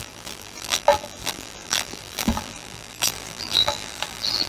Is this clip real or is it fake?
fake